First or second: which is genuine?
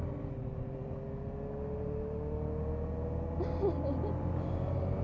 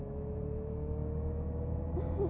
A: first